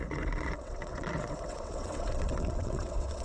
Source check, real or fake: fake